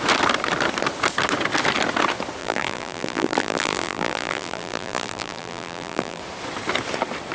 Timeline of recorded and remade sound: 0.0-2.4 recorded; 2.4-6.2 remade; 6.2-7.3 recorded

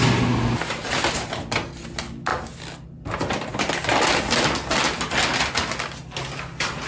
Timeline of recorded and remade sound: 0.0-6.9 recorded